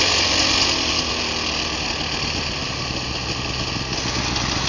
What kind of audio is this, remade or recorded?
recorded